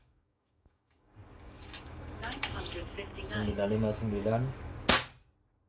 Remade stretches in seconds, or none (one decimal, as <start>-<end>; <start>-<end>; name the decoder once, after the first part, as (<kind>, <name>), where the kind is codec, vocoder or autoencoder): 0.0-4.7 (codec, DAC)

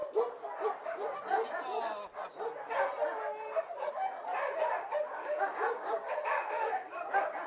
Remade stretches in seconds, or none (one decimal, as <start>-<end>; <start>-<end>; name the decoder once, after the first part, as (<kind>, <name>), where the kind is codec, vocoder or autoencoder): 5.1-7.0 (codec, DAC)

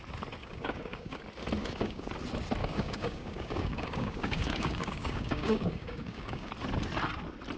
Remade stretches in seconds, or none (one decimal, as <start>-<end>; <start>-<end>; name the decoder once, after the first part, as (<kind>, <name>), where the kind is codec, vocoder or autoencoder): 0.4-1.2 (codec, DAC); 1.6-2.1; 2.6-6.5

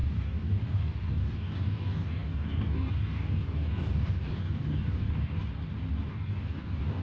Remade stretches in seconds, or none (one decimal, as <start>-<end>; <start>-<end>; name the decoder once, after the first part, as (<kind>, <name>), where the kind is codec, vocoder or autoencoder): 0.0-5.4 (codec, DAC); 6.1-7.0

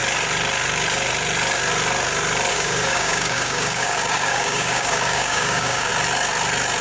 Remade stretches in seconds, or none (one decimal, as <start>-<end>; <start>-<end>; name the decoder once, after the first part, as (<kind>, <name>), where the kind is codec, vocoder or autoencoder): 2.5-5.9 (codec, DAC)

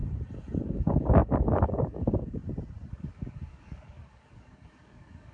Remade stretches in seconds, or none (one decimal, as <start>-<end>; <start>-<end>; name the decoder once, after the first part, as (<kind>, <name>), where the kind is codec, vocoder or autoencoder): 0.6-2.4 (codec, DAC); 2.9-5.3